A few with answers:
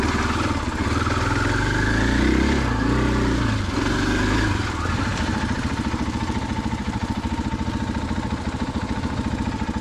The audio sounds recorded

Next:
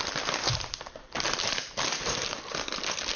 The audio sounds remade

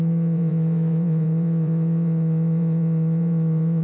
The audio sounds remade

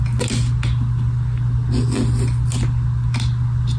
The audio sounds recorded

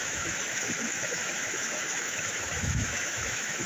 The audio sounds remade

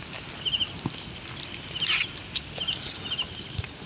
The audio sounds recorded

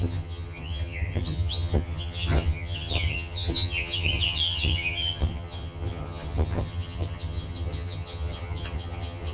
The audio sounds remade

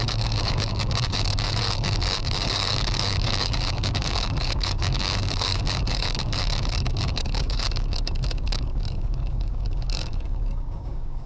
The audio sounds remade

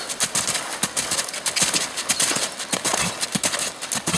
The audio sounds recorded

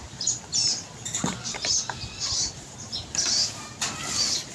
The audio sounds recorded